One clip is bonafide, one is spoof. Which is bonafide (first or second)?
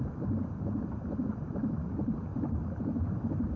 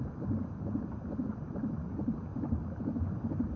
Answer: second